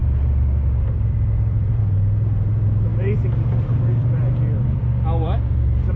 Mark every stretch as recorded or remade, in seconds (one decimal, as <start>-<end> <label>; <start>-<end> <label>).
0.0-0.8 recorded; 0.8-1.8 remade; 1.8-2.5 recorded; 2.5-6.0 remade